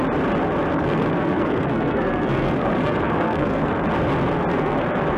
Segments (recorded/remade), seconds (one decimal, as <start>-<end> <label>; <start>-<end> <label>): 0.0-0.7 recorded; 0.7-3.8 remade; 3.8-4.5 recorded; 4.5-5.2 remade